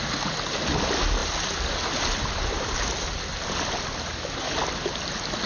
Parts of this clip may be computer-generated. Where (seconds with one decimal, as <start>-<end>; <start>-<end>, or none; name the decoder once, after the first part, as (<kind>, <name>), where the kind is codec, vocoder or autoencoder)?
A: none